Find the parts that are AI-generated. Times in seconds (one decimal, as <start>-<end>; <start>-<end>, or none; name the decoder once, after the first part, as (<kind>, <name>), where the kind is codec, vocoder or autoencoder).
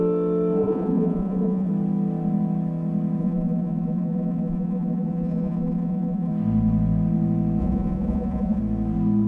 0.6-1.7 (vocoder, Vocos); 3.2-6.3; 7.6-8.6